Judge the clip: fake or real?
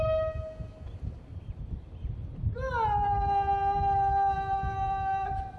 real